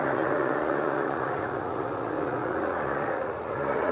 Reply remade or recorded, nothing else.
remade